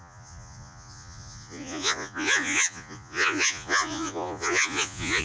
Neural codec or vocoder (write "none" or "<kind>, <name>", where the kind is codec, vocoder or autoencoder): vocoder, Vocos